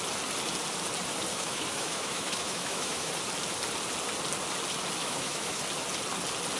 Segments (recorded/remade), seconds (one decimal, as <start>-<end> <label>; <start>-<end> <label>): 0.0-1.3 recorded; 1.3-3.1 remade; 3.1-5.0 recorded; 5.0-5.6 remade; 5.6-6.6 recorded